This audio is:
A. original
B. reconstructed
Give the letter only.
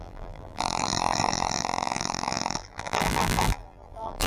B